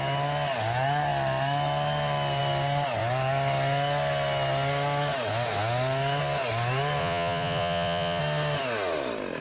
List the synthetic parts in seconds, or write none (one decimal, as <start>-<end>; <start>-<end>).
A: 7.0-8.2